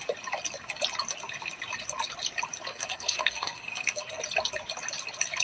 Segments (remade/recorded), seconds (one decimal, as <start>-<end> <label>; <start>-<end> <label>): 0.0-2.7 recorded; 2.7-4.2 remade; 4.2-5.4 recorded